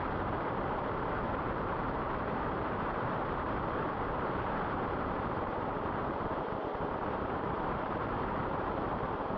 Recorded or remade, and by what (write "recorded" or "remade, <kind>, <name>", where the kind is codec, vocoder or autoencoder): remade, vocoder, BigVGAN v2